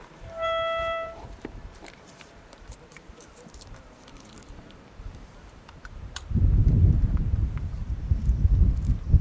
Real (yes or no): no